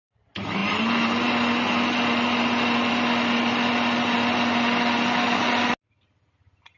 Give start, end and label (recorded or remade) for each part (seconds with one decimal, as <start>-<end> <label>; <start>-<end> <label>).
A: 0.0-6.8 recorded